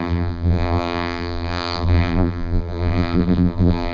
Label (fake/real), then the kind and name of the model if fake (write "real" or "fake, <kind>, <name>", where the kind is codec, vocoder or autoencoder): fake, vocoder, BigVGAN v2